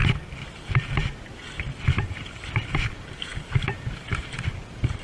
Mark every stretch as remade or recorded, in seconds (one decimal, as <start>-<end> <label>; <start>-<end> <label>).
0.0-1.9 recorded; 1.9-5.0 remade